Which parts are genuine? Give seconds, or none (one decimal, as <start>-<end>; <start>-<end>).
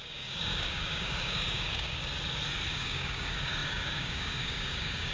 2.0-2.7